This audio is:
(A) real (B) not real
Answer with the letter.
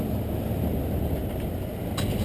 A